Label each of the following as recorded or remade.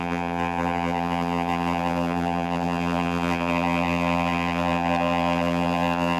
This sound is remade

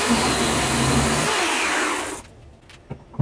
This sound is recorded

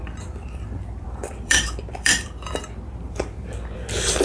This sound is remade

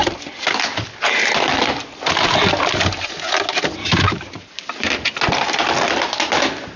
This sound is recorded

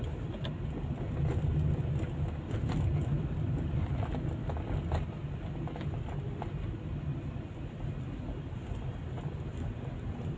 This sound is recorded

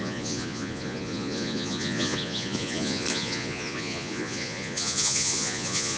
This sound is remade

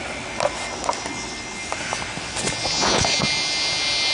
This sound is recorded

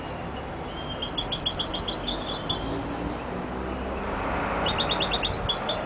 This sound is recorded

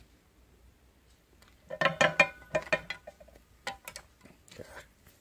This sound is recorded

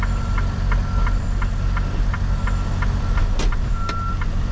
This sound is recorded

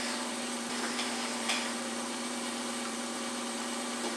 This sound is remade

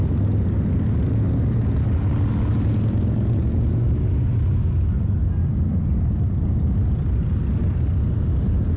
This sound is recorded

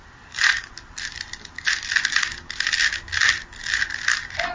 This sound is recorded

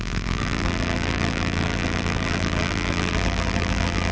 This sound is remade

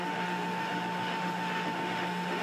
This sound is remade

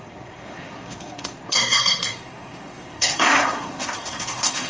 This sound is remade